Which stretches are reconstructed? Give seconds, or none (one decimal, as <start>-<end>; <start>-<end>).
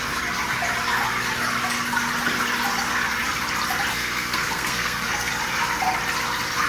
3.9-5.3